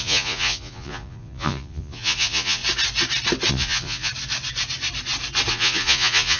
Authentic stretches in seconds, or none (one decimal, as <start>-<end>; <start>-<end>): 2.6-3.5; 4.1-5.5

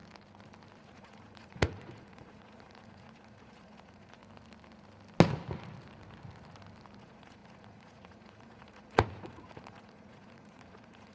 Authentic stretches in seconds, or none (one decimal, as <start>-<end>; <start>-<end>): 0.0-0.8; 4.2-7.0

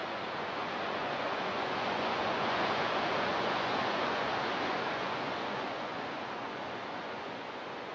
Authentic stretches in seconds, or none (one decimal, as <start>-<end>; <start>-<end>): none